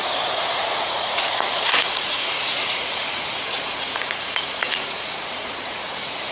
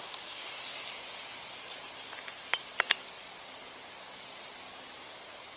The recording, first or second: second